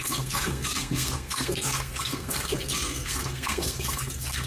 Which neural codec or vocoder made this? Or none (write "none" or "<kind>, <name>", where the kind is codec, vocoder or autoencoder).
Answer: codec, SNAC